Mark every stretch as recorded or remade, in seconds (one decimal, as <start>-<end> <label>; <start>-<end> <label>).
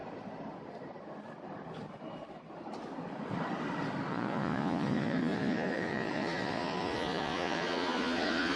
0.0-4.1 recorded; 4.1-8.6 remade